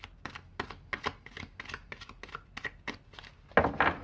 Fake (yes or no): no